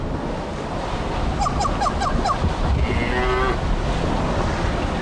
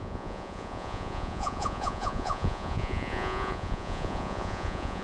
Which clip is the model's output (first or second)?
second